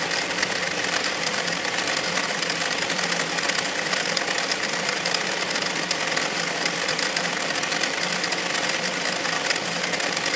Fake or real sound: fake